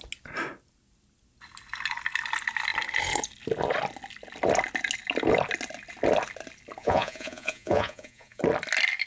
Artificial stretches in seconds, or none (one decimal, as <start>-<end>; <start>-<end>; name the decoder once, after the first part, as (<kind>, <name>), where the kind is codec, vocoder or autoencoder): 6.8-8.4 (vocoder, Vocos)